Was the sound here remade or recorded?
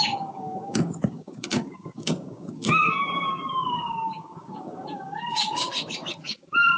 remade